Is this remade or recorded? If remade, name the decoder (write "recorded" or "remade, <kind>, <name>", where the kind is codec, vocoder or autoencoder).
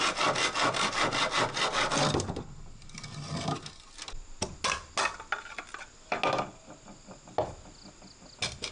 recorded